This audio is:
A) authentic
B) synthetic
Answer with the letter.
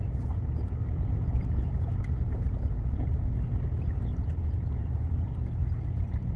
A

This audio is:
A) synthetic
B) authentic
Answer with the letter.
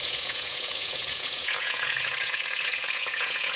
A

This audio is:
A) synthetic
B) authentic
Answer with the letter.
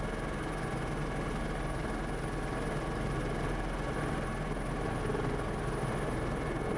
B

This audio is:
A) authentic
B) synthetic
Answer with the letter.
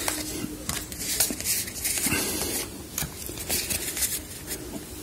A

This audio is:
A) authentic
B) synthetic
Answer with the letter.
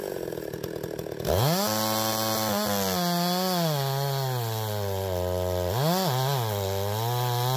A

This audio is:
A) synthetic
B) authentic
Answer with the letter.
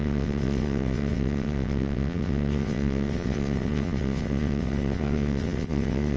A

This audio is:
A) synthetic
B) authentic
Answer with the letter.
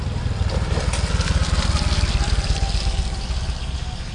B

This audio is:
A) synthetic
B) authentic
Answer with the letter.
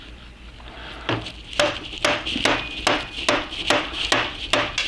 B